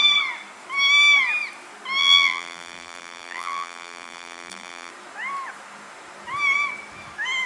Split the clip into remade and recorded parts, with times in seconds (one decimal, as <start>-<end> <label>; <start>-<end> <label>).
0.0-2.0 recorded; 2.0-4.9 remade; 4.9-7.5 recorded